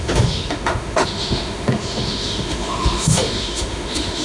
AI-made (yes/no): yes